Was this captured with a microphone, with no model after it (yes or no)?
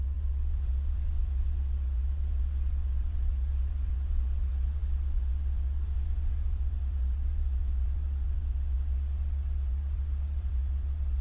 no